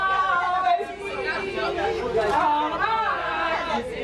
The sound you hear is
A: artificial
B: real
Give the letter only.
B